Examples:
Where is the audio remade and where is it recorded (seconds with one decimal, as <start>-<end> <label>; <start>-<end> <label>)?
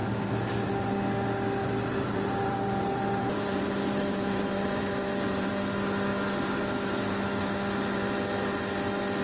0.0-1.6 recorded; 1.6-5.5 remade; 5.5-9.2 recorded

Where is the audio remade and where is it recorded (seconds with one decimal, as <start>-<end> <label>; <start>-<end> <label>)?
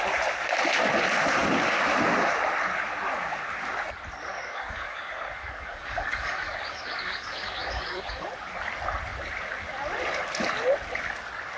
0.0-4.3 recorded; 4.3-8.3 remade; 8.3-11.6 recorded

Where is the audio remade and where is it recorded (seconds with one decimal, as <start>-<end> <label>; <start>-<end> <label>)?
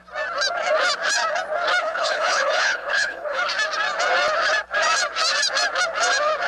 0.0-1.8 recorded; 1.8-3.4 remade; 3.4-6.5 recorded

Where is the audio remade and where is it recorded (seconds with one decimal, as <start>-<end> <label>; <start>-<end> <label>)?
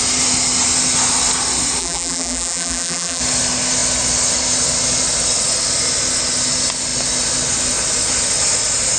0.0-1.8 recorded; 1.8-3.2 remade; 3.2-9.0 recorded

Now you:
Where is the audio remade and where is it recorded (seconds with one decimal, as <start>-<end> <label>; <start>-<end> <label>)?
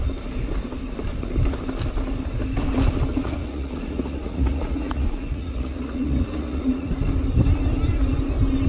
0.0-3.1 recorded; 3.1-6.9 remade; 6.9-8.7 recorded